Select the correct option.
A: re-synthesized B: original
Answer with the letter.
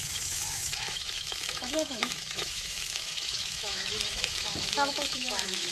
A